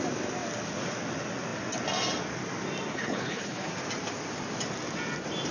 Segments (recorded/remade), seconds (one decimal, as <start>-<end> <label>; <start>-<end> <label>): 0.0-2.9 recorded; 2.9-3.7 remade; 3.7-5.5 recorded

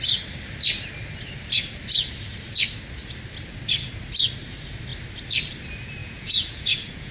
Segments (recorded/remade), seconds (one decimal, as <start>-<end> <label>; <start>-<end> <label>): 0.0-6.0 recorded; 6.0-7.1 remade

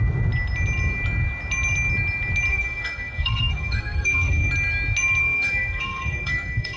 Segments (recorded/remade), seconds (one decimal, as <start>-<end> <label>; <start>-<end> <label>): 0.0-2.5 recorded; 2.5-4.5 remade; 4.5-5.2 recorded; 5.2-6.8 remade

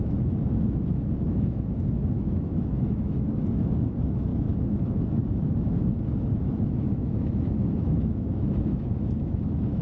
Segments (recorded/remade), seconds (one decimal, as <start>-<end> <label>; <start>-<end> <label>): 0.0-9.8 remade

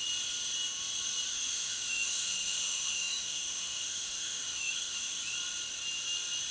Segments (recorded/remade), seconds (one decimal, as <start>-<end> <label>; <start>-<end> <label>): 0.0-1.3 recorded; 1.3-5.2 remade; 5.2-6.5 recorded

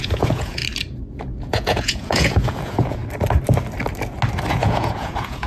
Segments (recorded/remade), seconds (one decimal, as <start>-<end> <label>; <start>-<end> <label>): 0.0-0.6 remade; 0.6-1.1 recorded; 1.1-3.0 remade; 3.0-4.5 recorded; 4.5-5.5 remade